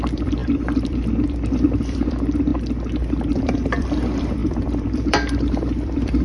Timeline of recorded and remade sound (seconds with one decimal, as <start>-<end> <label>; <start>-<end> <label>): 0.0-2.5 remade; 2.5-3.3 recorded; 3.3-6.2 remade